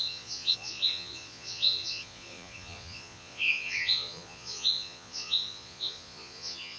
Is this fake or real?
fake